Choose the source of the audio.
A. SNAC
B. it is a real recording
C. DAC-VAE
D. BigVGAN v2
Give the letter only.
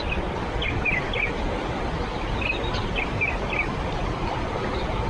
D